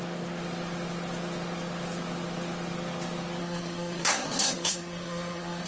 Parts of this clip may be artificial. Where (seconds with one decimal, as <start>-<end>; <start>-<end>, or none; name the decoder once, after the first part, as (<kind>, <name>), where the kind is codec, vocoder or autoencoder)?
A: 3.4-5.7 (codec, SNAC)